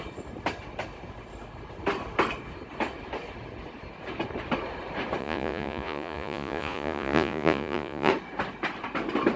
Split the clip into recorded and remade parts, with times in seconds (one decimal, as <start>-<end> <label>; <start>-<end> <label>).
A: 0.0-5.2 recorded; 5.2-8.1 remade; 8.1-9.4 recorded